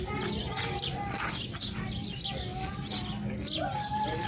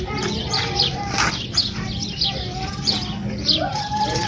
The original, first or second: first